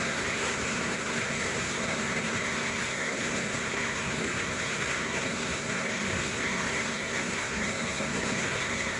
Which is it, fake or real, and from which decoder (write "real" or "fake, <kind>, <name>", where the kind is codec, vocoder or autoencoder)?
fake, codec, SNAC